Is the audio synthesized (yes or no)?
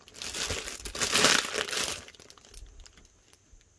no